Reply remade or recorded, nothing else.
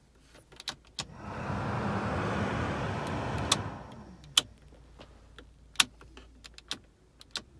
recorded